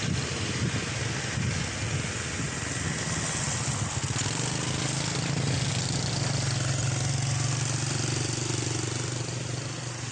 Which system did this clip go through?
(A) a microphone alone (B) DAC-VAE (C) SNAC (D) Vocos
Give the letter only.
A